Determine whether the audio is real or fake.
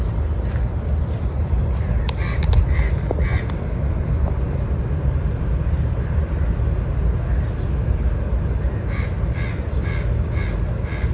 real